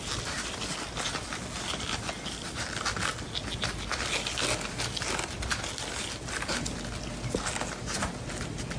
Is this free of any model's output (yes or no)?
yes